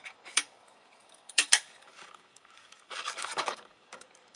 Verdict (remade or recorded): remade